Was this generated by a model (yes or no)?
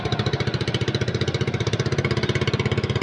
no